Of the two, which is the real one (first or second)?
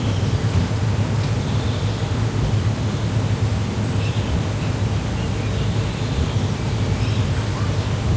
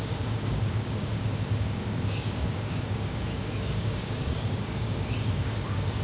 first